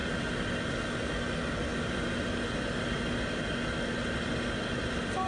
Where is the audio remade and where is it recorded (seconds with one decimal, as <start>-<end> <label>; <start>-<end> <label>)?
0.0-5.3 recorded